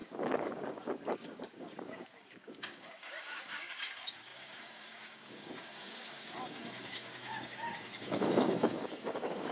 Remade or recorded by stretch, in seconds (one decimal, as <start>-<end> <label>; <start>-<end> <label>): 0.0-9.5 remade